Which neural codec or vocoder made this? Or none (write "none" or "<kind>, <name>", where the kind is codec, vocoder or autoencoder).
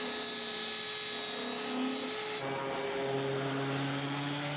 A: none